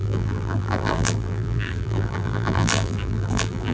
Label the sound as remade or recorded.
remade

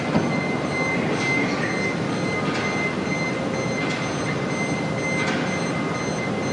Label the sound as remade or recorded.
recorded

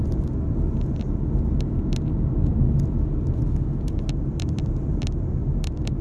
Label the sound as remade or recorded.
recorded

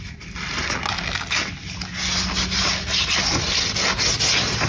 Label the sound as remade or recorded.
recorded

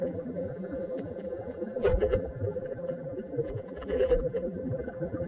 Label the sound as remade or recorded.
remade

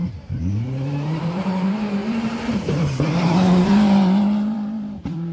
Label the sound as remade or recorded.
remade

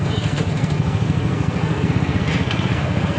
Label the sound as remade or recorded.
remade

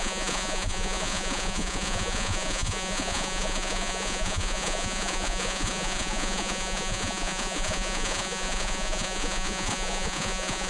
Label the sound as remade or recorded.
remade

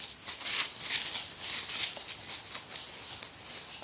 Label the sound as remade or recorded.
recorded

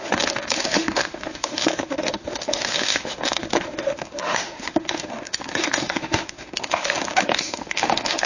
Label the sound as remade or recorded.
remade